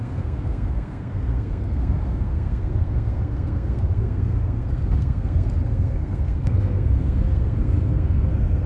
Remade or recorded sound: remade